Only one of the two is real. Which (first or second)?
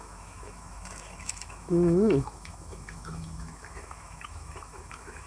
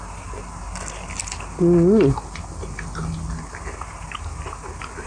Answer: second